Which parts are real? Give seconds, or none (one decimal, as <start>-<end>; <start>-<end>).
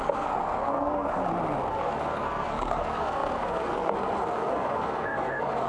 1.2-1.7